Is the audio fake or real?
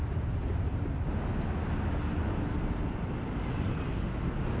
real